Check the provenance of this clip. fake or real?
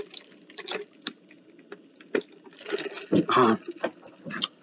real